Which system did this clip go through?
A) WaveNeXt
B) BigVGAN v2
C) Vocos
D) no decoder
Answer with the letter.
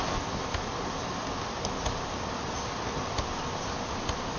D